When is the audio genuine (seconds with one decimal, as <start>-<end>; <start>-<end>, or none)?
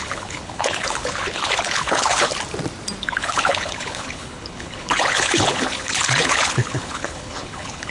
2.3-3.0